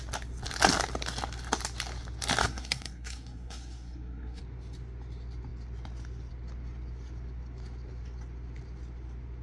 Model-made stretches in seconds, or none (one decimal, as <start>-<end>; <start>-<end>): 2.4-4.4